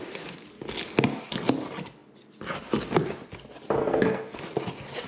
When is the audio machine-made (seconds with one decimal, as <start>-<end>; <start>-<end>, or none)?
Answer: 3.8-4.4